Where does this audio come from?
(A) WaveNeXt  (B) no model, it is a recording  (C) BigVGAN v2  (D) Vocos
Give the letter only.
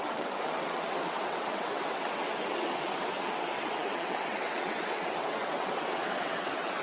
A